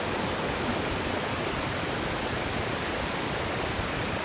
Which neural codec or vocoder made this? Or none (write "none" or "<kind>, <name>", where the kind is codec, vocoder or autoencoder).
none